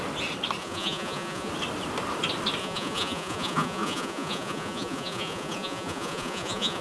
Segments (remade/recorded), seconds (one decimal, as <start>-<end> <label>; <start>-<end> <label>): 0.0-0.6 recorded; 0.6-1.5 remade; 1.5-2.6 recorded; 2.6-6.8 remade